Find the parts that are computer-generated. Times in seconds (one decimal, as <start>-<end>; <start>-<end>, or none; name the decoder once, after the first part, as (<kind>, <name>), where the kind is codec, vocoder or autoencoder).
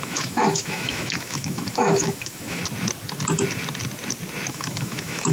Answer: 0.0-2.6 (autoencoder, DAC-VAE); 4.5-5.3